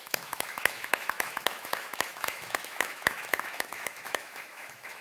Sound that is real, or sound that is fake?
fake